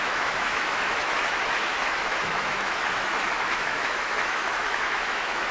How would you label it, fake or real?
fake